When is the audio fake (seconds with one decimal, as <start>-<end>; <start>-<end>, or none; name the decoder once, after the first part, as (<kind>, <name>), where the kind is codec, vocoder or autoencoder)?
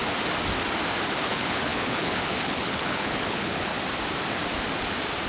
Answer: 1.2-3.7 (codec, HILCodec)